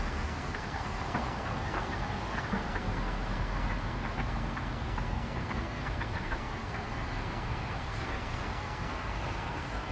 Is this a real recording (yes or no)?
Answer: no